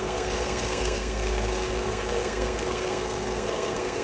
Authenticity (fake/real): fake